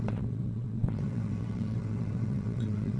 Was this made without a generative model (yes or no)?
no